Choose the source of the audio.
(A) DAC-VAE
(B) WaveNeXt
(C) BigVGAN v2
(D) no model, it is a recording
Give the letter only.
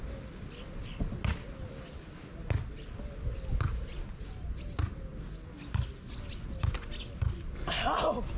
D